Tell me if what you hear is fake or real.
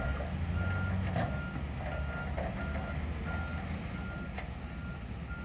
real